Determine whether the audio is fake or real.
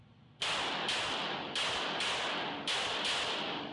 real